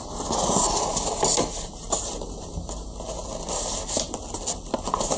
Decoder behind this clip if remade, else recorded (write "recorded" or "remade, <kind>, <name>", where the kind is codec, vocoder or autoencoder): recorded